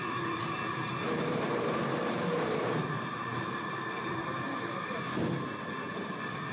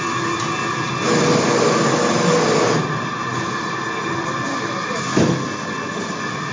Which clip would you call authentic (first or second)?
second